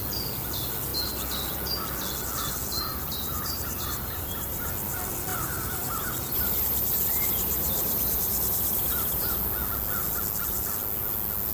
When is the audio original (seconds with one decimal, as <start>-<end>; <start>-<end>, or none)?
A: 0.0-2.9; 4.7-5.3; 9.4-11.5